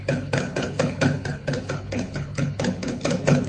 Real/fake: fake